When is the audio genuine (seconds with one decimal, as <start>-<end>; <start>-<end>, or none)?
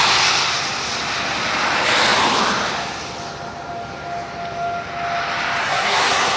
0.0-5.6